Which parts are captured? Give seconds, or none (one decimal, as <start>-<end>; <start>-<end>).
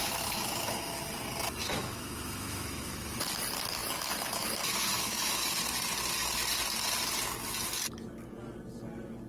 1.0-1.6; 3.2-3.8; 5.6-9.3